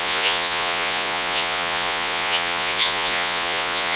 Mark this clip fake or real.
fake